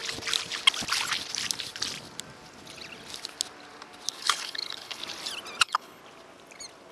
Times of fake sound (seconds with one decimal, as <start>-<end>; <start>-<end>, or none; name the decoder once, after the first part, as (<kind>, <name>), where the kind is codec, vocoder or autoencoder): 4.1-5.0 (codec, HILCodec); 5.6-6.0